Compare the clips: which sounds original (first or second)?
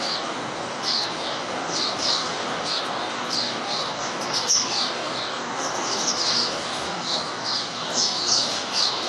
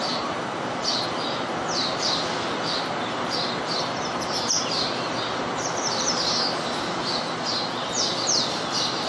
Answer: second